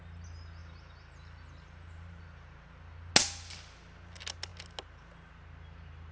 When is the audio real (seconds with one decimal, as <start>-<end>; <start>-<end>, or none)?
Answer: 0.0-0.6; 3.1-6.1